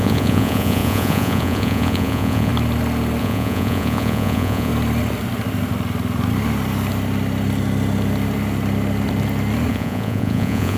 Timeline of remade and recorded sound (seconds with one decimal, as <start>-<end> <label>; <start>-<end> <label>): 0.0-2.5 remade; 2.5-3.2 recorded; 3.2-4.7 remade; 4.7-9.7 recorded; 9.7-10.8 remade